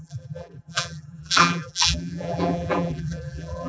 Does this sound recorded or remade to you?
remade